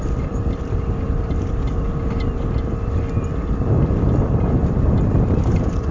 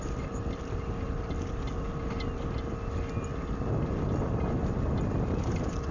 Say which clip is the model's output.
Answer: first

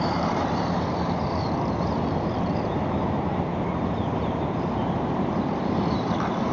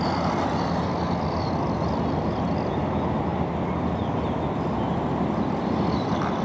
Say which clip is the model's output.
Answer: first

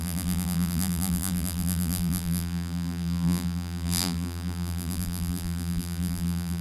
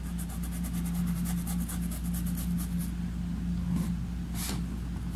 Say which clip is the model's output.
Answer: first